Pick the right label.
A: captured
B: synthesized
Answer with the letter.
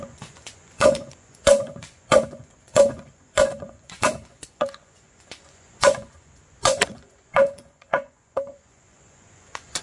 B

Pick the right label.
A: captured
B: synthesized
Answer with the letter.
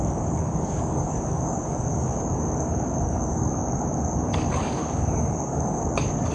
B